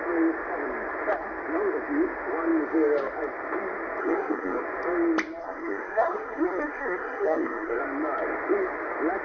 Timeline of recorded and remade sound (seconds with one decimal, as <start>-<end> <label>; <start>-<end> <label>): 0.0-4.0 recorded; 4.0-4.6 remade; 4.6-5.4 recorded; 5.4-7.8 remade; 7.8-9.2 recorded

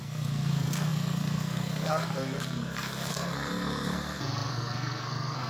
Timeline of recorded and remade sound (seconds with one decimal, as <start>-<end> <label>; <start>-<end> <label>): 0.0-5.5 remade

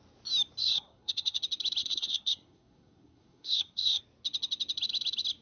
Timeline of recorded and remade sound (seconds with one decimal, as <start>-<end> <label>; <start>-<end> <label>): 0.0-0.6 recorded; 0.6-1.4 remade; 1.4-1.8 recorded; 1.8-4.0 remade; 4.0-5.4 recorded

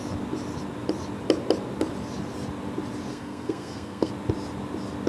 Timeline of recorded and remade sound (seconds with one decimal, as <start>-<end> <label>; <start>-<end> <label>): 0.0-3.1 recorded; 3.1-4.1 remade; 4.1-5.1 recorded

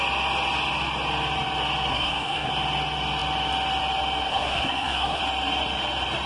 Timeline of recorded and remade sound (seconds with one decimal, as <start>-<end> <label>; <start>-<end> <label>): 0.0-1.9 recorded; 1.9-2.5 remade; 2.5-4.3 recorded; 4.3-5.2 remade; 5.2-6.3 recorded

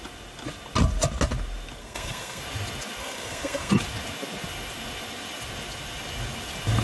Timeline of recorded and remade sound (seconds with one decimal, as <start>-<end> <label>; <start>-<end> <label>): 0.0-1.8 recorded; 1.8-2.4 remade; 2.4-3.0 recorded; 3.0-3.7 remade; 3.7-6.8 recorded